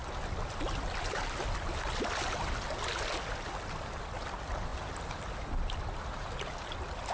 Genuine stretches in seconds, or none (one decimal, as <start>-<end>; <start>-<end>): 0.0-7.1